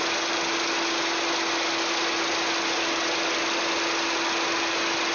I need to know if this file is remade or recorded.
recorded